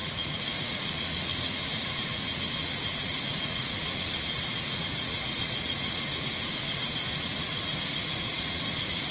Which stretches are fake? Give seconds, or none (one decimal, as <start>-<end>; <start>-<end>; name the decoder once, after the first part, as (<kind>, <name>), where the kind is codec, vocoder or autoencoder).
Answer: 0.0-9.1 (vocoder, Vocos)